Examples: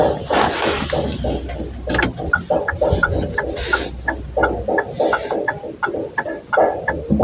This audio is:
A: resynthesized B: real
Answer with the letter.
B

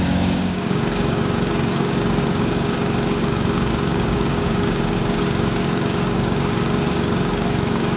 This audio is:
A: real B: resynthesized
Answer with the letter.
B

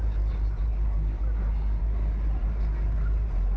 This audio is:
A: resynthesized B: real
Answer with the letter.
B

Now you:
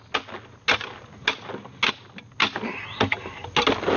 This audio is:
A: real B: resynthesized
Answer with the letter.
A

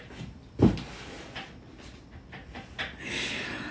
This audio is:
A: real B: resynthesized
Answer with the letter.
A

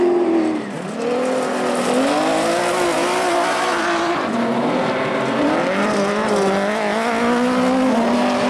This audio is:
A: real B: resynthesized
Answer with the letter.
A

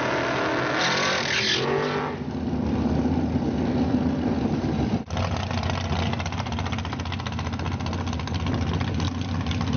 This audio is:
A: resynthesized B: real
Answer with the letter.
B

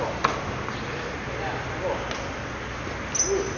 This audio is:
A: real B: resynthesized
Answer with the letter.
A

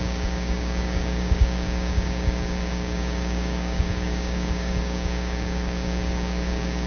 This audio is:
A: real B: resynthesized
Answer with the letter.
B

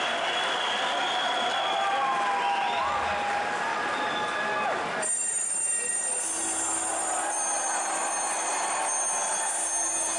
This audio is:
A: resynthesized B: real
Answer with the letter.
B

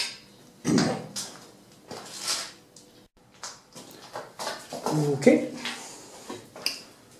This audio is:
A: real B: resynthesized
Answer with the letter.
A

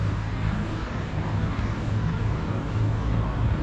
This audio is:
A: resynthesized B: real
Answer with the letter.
A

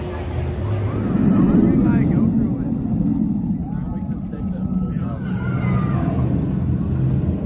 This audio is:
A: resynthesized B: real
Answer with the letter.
B